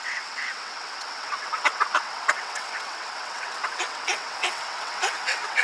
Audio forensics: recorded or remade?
remade